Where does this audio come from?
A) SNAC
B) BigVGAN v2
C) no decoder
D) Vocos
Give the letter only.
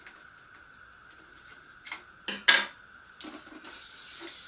C